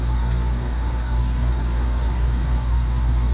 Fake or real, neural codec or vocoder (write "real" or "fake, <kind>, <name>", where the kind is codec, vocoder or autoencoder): fake, codec, DAC